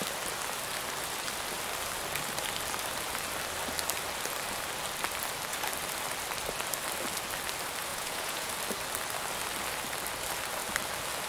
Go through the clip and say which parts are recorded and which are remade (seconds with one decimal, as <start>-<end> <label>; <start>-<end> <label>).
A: 0.0-7.9 recorded; 7.9-8.5 remade; 8.5-11.3 recorded